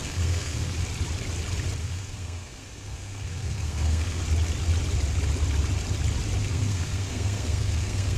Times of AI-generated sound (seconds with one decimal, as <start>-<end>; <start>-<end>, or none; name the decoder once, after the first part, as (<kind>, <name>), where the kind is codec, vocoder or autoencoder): 0.0-0.7 (codec, SNAC); 1.8-4.2; 6.4-8.2